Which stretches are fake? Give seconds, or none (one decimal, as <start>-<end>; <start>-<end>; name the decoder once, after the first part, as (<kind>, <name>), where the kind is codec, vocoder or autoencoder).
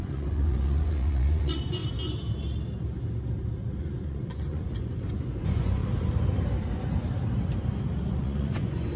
0.0-1.8 (vocoder, Vocos); 3.8-5.8; 8.2-9.0